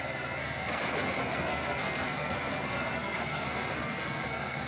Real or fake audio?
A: fake